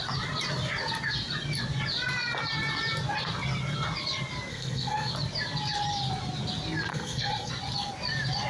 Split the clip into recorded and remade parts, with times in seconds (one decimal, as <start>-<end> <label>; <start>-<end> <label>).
0.0-4.5 recorded; 4.5-5.1 remade; 5.1-6.9 recorded; 6.9-7.5 remade; 7.5-8.5 recorded